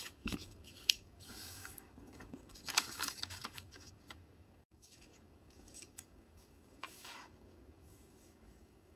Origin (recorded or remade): remade